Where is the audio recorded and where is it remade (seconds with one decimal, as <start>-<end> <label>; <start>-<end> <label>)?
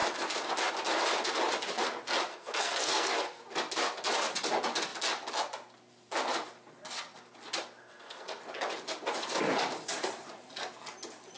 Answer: 0.0-2.3 recorded; 2.3-3.4 remade; 3.4-7.8 recorded; 7.8-8.4 remade; 8.4-11.4 recorded